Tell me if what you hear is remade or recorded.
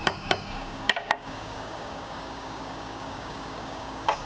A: remade